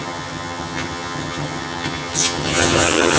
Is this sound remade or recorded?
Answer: remade